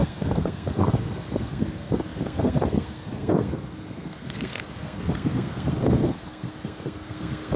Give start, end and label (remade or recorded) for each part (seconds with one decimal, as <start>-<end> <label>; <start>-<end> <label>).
0.0-7.6 remade